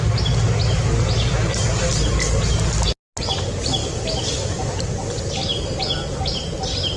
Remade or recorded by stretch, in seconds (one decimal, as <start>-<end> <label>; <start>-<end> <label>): 0.0-7.0 recorded